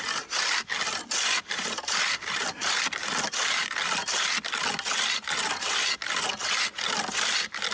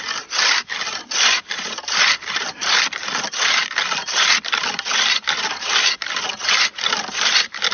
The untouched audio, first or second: first